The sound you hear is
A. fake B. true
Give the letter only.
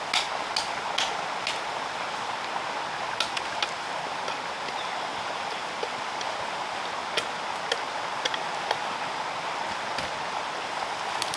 B